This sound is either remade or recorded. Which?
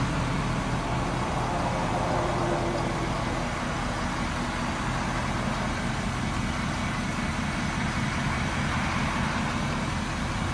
recorded